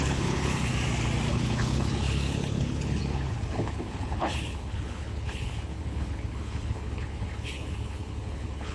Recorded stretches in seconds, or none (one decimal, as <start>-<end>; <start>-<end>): 0.7-1.3